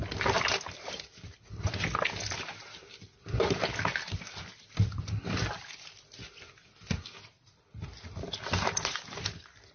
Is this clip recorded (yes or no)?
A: yes